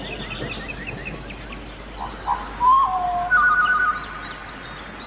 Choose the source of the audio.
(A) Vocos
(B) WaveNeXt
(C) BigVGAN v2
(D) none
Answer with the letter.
D